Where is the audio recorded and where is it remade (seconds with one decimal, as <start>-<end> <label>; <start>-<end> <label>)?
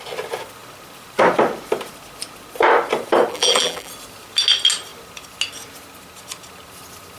0.0-3.3 recorded; 3.3-3.9 remade; 3.9-7.2 recorded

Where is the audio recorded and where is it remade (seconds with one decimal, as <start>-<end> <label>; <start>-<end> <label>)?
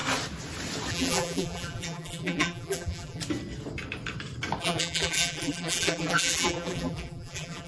0.0-0.9 recorded; 0.9-3.2 remade; 3.2-4.6 recorded; 4.6-7.7 remade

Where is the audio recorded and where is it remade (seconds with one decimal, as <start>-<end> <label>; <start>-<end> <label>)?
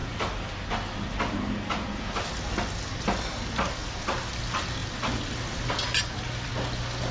0.0-3.8 recorded; 3.8-4.3 remade; 4.3-7.1 recorded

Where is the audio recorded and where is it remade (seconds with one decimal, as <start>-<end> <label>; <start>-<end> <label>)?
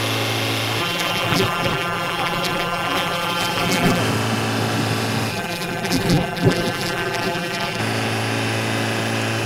0.0-0.8 recorded; 0.8-4.0 remade; 4.0-5.3 recorded; 5.3-7.8 remade; 7.8-9.5 recorded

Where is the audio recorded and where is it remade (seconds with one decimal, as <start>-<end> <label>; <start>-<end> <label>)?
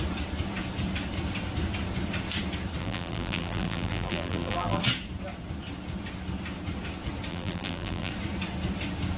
0.0-2.8 recorded; 2.8-4.8 remade; 4.8-7.3 recorded; 7.3-8.1 remade; 8.1-9.2 recorded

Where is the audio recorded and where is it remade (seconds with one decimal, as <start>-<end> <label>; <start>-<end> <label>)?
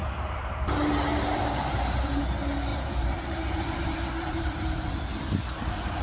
0.0-0.7 remade; 0.7-1.1 recorded; 1.1-2.2 remade; 2.2-2.7 recorded; 2.7-4.9 remade; 4.9-6.0 recorded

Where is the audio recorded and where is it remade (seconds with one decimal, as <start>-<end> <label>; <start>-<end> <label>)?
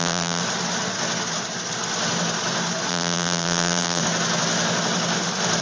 0.0-0.4 remade; 0.4-2.9 recorded; 2.9-4.0 remade; 4.0-5.6 recorded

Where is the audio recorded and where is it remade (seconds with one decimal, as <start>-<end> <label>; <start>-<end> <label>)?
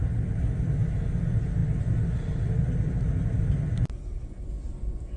0.0-5.2 recorded